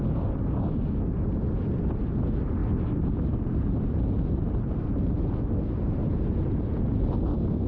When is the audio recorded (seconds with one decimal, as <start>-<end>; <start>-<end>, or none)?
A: 0.0-2.6; 7.2-7.7